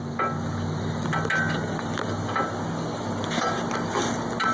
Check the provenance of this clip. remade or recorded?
recorded